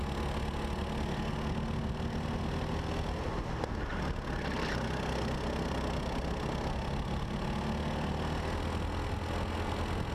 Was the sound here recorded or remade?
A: recorded